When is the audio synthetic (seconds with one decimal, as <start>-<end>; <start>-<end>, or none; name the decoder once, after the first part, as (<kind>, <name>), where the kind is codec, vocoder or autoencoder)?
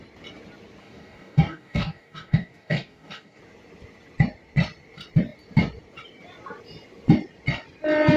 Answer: 0.8-3.4 (codec, DAC)